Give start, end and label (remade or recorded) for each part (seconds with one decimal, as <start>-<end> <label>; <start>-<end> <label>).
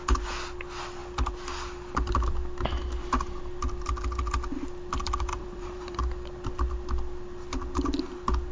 0.0-5.3 recorded; 5.3-6.0 remade; 6.0-8.5 recorded